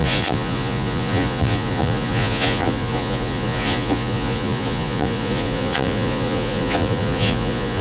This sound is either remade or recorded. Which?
remade